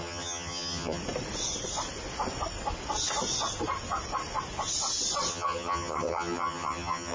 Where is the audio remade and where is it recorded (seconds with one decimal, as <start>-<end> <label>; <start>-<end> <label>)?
0.0-1.0 remade; 1.0-5.3 recorded; 5.3-7.1 remade